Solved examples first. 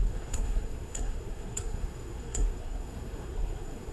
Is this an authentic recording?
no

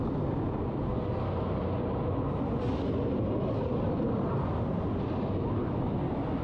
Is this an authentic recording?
yes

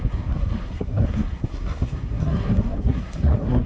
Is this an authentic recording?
no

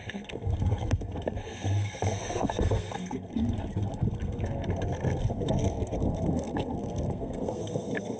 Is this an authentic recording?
no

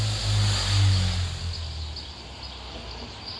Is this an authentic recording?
yes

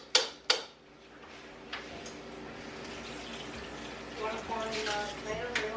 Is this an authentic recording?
yes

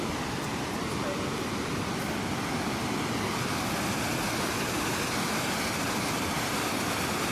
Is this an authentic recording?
yes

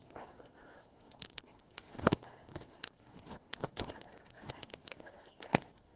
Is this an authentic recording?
no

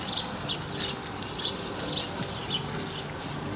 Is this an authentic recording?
yes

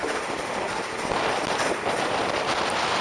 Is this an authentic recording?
yes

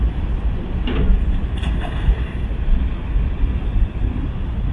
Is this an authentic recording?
yes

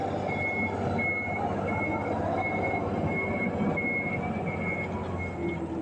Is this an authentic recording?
yes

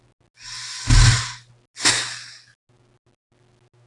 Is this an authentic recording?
yes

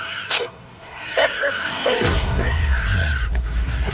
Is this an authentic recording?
no